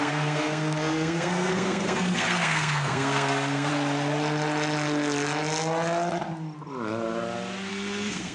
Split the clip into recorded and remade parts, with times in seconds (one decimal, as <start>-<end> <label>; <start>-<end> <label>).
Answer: 0.0-3.7 remade; 3.7-7.7 recorded; 7.7-8.3 remade